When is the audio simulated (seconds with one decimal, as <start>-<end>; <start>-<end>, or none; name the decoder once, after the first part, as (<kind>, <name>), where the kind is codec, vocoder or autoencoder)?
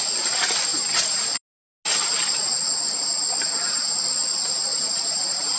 0.7-1.4 (vocoder, BigVGAN v2); 4.7-5.6